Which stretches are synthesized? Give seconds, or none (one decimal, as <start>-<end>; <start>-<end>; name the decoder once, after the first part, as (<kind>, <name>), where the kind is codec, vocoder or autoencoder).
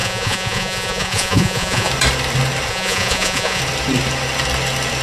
0.0-1.9 (vocoder, Vocos); 2.7-3.6